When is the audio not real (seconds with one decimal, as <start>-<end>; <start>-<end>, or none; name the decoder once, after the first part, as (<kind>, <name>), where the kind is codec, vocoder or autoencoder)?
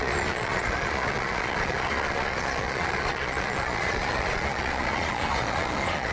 0.0-6.1 (vocoder, Vocos)